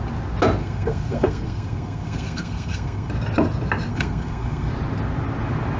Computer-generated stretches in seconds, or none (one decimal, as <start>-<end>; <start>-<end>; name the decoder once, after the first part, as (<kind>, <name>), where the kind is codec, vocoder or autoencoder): 0.6-3.1 (codec, SNAC); 3.9-4.7